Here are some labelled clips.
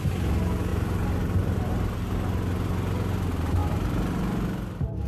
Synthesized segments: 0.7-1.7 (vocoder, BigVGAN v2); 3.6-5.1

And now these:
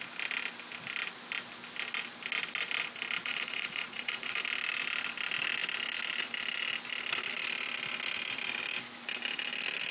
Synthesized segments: 3.2-4.4 (vocoder, Vocos)

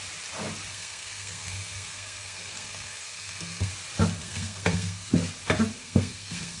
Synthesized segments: 0.7-3.7 (codec, SNAC); 4.2-5.1; 5.8-6.6

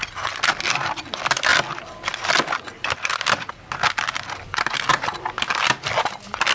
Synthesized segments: none